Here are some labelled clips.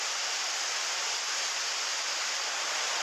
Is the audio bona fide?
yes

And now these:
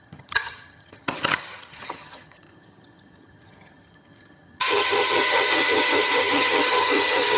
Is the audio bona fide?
no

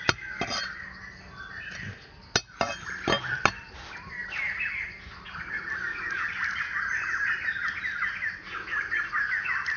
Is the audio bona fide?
yes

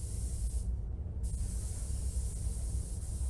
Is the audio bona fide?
yes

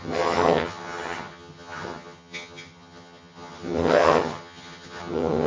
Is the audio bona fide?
no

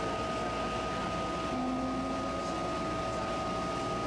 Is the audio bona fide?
yes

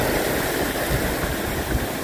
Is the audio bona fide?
yes